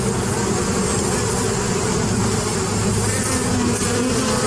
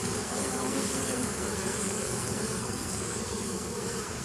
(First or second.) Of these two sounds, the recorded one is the first